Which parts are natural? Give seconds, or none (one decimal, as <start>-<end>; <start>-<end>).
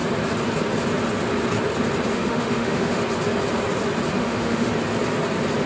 0.0-2.1; 3.0-4.2; 4.7-5.7